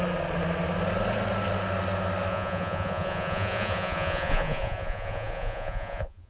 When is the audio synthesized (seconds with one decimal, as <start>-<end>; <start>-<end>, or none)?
2.3-6.3